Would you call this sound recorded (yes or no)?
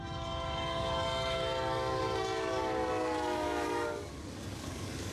no